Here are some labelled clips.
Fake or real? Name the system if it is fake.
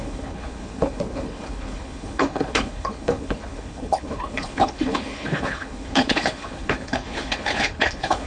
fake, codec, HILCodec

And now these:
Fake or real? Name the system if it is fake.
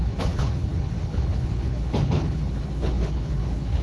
fake, codec, HILCodec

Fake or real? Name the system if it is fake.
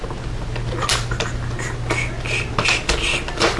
real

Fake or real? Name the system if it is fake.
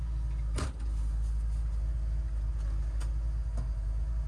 real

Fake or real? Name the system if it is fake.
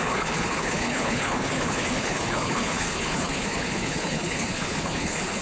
fake, codec, HILCodec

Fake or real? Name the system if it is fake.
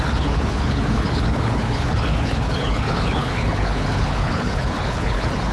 fake, codec, HILCodec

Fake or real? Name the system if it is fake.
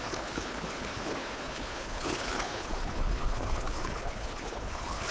fake, codec, HILCodec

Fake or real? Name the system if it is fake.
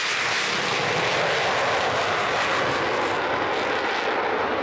real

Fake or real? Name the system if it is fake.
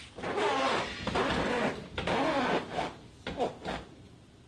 real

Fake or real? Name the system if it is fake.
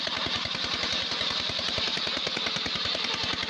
real